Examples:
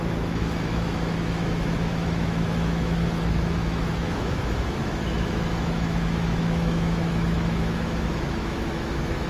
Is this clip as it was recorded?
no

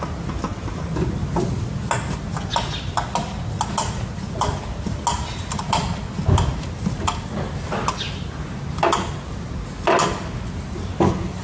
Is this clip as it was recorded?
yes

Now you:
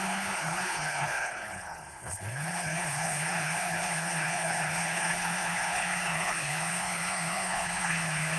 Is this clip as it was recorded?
no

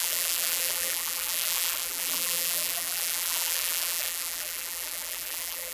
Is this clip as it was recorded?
no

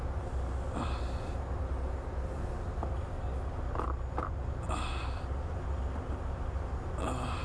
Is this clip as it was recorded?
yes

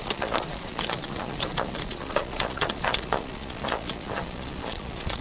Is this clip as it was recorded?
no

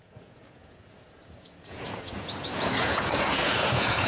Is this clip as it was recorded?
no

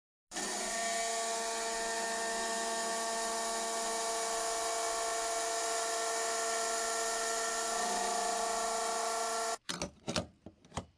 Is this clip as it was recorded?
yes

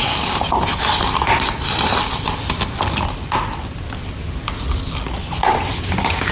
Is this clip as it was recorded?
yes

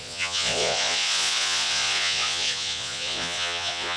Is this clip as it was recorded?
no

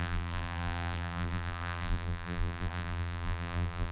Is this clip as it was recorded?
no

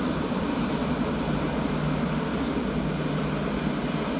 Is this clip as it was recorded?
yes